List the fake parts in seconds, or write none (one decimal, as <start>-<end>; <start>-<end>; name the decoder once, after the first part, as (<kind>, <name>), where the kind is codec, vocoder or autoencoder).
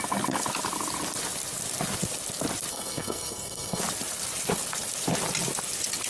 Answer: 2.7-3.8 (codec, SNAC)